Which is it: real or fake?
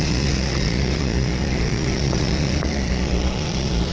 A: fake